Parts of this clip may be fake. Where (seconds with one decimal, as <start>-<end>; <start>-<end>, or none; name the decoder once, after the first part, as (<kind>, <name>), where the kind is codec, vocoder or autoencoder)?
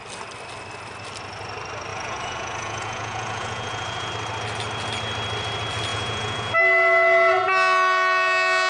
1.9-4.1 (vocoder, Vocos); 5.9-6.5